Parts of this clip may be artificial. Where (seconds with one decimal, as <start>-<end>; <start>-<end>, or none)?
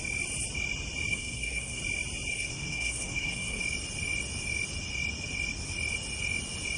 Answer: 1.1-1.8; 2.3-3.6